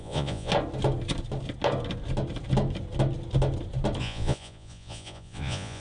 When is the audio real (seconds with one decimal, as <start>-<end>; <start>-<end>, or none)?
0.5-4.0